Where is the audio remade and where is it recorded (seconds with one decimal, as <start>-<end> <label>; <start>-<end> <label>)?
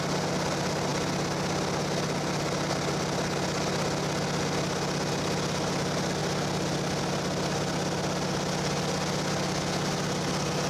0.0-10.7 recorded